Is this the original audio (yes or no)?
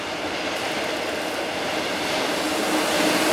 yes